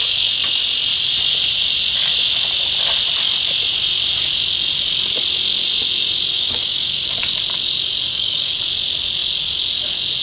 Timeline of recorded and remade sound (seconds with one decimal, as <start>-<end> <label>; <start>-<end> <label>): 0.0-6.3 recorded; 6.3-7.1 remade; 7.1-8.1 recorded; 8.1-8.6 remade; 8.6-10.2 recorded